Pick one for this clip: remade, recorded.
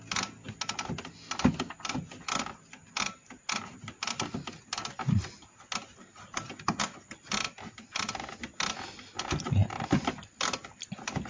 recorded